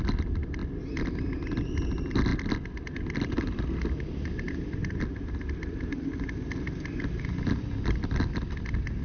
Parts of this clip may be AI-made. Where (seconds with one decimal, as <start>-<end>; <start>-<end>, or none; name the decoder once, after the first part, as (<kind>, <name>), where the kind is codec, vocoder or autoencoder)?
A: none